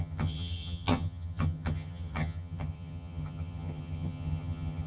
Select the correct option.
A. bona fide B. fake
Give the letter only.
B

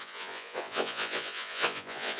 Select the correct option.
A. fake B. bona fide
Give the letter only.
A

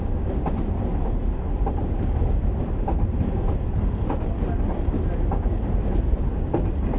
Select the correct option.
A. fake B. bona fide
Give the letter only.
B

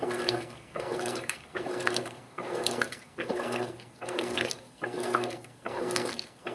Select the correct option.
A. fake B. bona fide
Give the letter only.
A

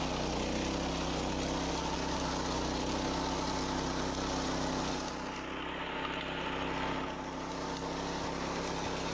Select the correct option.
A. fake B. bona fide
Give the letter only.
B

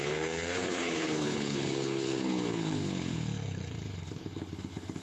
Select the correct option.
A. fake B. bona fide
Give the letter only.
A